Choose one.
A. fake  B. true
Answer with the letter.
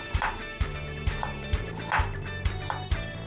B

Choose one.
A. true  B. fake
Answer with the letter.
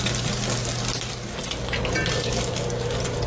A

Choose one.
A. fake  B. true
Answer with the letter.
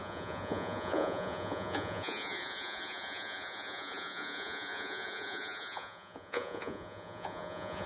A